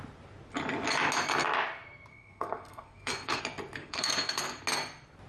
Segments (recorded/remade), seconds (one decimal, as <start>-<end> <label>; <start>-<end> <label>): 0.0-2.1 recorded; 2.1-3.4 remade; 3.4-3.8 recorded; 3.8-4.6 remade; 4.6-5.3 recorded